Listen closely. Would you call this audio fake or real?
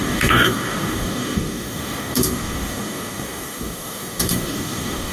fake